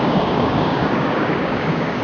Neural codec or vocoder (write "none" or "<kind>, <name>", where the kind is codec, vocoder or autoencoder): codec, DAC